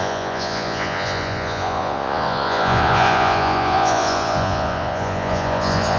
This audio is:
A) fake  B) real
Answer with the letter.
A